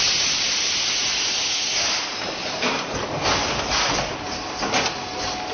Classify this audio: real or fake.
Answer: real